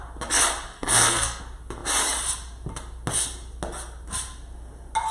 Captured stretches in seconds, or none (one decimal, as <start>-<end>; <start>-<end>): 0.0-0.7; 1.4-5.1